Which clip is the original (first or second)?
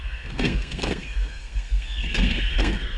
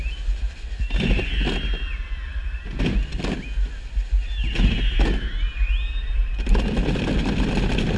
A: second